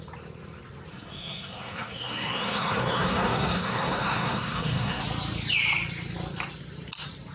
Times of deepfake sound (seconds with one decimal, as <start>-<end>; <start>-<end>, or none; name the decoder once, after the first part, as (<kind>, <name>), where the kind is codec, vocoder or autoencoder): 0.9-5.0 (codec, SNAC)